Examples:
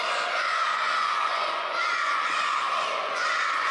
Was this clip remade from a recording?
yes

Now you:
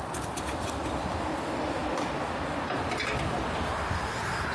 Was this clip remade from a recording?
no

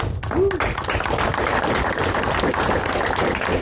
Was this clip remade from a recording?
no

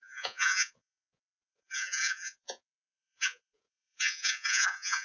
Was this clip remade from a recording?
yes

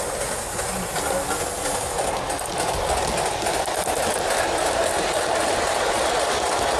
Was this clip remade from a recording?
no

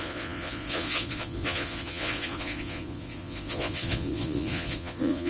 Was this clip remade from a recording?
yes